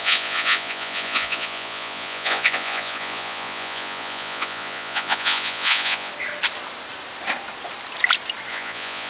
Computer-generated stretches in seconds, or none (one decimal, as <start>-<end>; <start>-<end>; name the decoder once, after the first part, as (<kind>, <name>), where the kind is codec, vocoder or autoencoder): 0.0-6.1 (vocoder, Vocos); 8.5-9.1